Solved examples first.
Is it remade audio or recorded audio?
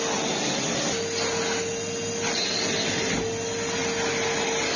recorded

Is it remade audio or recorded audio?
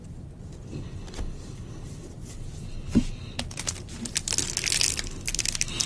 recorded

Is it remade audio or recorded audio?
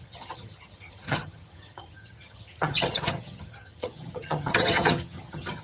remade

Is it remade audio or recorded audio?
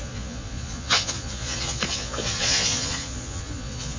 remade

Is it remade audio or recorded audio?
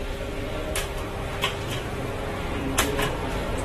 recorded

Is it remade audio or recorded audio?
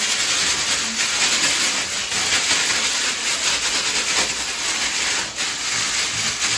recorded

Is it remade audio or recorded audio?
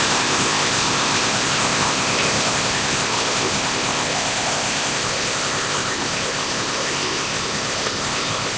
remade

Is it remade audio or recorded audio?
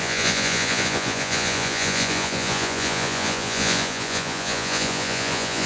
remade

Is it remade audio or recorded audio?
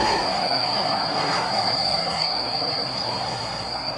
remade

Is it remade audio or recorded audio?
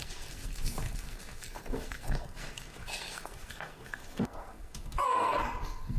remade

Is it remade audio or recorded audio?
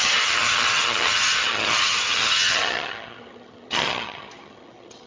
remade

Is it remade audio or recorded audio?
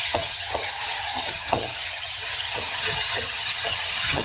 remade